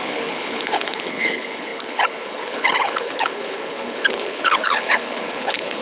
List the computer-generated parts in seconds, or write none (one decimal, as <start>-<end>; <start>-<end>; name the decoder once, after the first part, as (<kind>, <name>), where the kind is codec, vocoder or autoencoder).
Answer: 0.0-5.8 (codec, HILCodec)